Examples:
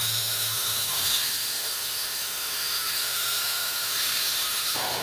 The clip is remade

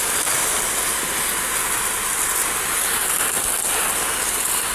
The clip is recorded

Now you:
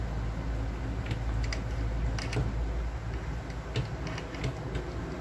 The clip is recorded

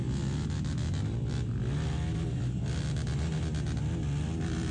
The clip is recorded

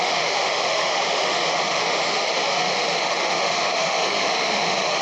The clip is remade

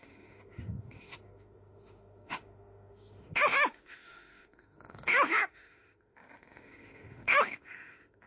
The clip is remade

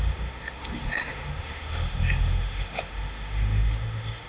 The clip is remade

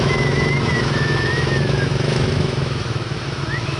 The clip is remade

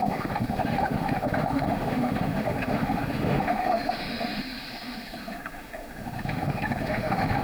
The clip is remade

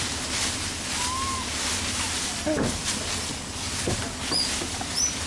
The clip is recorded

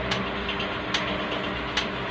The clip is recorded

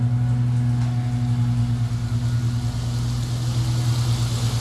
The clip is recorded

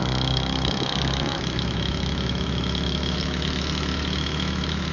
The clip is remade